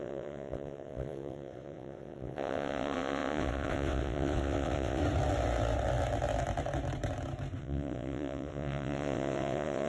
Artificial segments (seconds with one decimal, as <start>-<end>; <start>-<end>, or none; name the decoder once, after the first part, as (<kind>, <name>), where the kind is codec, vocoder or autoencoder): 0.0-5.0 (vocoder, WaveNeXt); 7.6-9.9

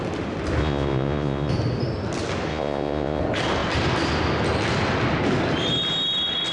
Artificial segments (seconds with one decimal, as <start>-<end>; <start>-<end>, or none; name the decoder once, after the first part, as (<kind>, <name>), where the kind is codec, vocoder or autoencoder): 0.6-1.5 (vocoder, Vocos); 2.5-3.2